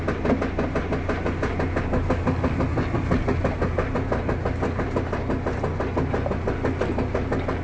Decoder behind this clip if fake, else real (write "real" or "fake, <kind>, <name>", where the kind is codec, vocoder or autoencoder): real